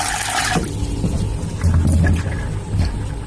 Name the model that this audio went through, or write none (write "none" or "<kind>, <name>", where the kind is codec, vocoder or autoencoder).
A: none